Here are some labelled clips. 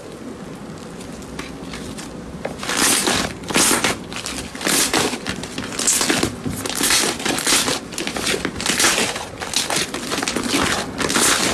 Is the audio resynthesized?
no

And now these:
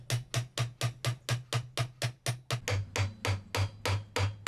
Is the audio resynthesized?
no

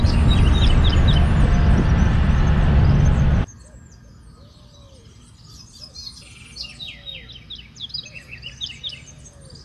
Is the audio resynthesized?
no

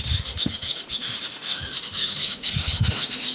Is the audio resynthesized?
yes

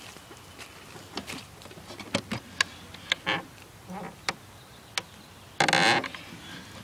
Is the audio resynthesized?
no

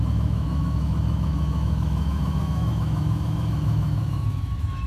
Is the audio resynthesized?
yes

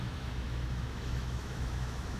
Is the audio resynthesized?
yes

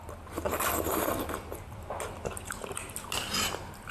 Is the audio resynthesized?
no